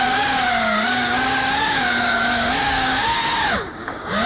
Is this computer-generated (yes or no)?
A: yes